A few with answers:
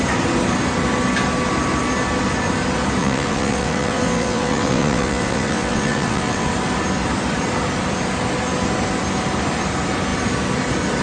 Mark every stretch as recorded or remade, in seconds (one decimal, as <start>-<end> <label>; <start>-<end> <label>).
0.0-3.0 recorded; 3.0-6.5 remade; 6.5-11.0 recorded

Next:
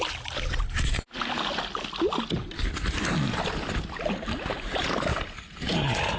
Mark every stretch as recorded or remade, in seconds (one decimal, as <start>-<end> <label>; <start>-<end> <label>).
0.0-5.1 recorded; 5.1-5.6 remade; 5.6-6.2 recorded

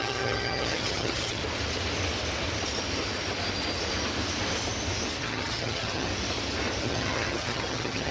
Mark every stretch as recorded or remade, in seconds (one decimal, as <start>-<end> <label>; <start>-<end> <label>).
0.0-1.4 remade; 1.4-5.2 recorded; 5.2-6.1 remade; 6.1-6.8 recorded; 6.8-8.1 remade